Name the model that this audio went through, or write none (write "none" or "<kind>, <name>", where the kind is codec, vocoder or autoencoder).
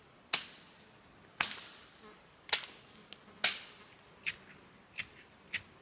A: none